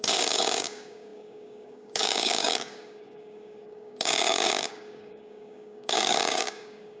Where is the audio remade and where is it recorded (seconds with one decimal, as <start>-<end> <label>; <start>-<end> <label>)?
0.0-7.0 remade